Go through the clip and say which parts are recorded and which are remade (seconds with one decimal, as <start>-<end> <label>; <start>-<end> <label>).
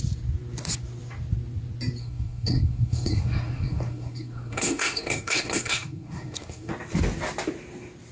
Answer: 0.0-2.0 recorded; 2.0-6.7 remade; 6.7-8.1 recorded